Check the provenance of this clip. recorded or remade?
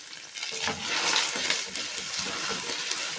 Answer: recorded